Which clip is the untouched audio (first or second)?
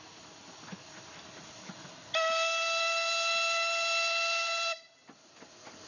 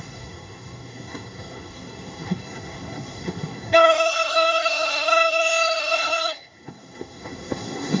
first